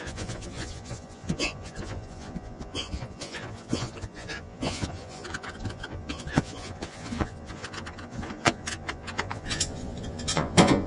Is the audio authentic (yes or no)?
no